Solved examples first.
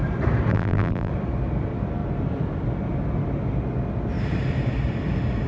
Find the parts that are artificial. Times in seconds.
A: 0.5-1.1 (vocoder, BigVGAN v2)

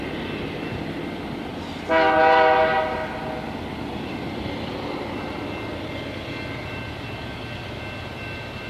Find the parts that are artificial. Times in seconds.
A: none

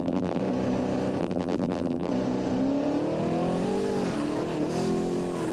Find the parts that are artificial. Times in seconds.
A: 0.0-0.4 (vocoder, BigVGAN v2); 1.2-2.1

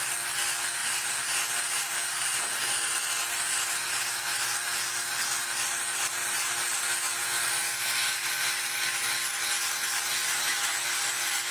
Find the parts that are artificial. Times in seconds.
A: 0.8-2.4 (vocoder, BigVGAN v2); 6.2-6.8